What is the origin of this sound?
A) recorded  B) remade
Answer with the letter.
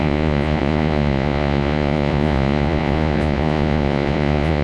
B